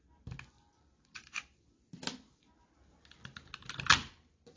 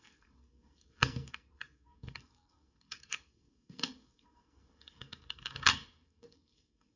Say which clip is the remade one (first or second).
second